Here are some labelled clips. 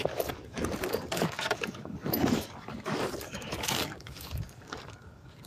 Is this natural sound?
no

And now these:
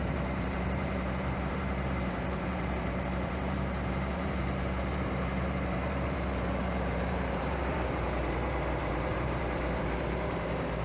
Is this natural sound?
no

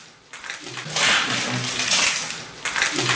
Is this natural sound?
yes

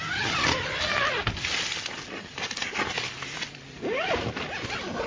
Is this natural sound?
yes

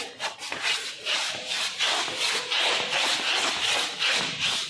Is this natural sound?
yes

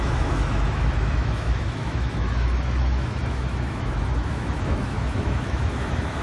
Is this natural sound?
no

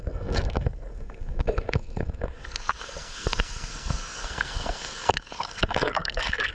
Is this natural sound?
no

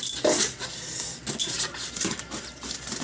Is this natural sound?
yes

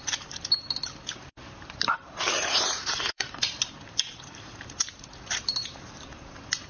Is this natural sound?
no